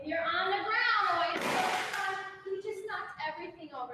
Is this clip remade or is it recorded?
recorded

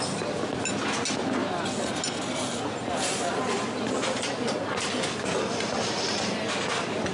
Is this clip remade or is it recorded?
recorded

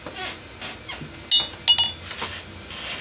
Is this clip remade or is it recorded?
recorded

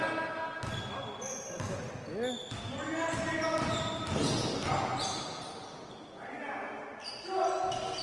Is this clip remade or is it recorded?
recorded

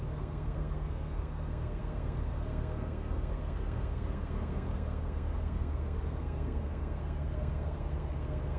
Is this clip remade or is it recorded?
remade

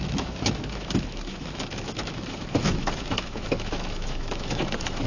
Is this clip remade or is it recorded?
remade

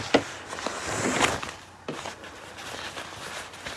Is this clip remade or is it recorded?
recorded